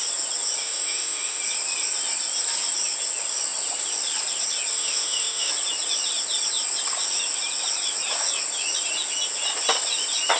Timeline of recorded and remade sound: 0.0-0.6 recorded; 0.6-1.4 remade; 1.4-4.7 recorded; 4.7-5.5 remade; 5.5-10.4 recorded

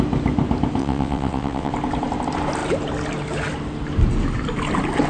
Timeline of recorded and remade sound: 0.0-0.8 recorded; 0.8-1.7 remade; 1.7-5.1 recorded

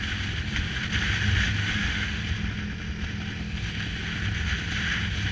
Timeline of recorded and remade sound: 0.0-1.6 recorded; 1.6-2.2 remade; 2.2-5.3 recorded

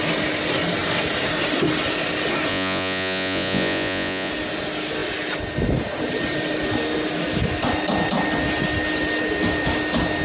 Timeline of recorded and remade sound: 0.0-2.5 recorded; 2.5-4.3 remade; 4.3-10.2 recorded

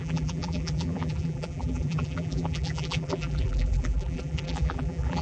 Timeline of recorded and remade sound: 0.0-5.2 remade

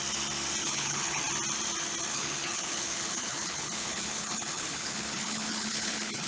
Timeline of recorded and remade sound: 0.0-0.6 recorded; 0.6-1.2 remade; 1.2-2.1 recorded; 2.1-6.3 remade

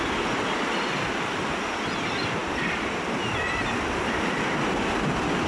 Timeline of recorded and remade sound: 0.0-5.5 recorded